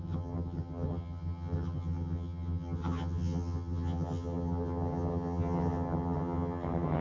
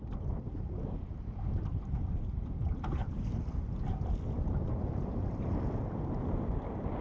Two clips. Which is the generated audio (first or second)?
first